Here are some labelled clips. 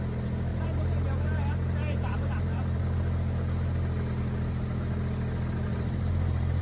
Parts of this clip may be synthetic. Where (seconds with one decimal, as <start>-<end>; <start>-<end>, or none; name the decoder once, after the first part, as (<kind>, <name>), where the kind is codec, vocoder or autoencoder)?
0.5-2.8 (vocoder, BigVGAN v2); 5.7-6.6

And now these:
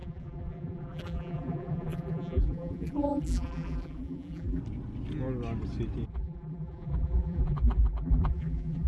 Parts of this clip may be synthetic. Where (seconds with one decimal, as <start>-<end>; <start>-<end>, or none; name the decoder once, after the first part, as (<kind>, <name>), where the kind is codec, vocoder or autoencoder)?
0.0-4.6 (vocoder, BigVGAN v2); 6.1-8.9

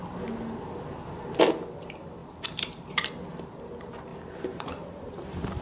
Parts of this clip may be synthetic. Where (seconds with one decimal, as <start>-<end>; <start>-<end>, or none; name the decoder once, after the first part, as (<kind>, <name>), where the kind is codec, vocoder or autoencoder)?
2.2-3.1 (vocoder, BigVGAN v2); 4.1-5.6